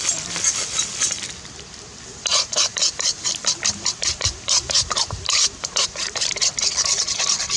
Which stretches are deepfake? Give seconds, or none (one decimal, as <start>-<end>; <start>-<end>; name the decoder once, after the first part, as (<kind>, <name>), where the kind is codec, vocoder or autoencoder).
2.3-6.3 (vocoder, BigVGAN v2)